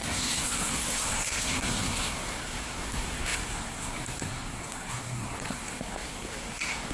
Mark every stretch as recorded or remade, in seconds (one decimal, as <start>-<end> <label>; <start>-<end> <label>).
0.0-6.9 remade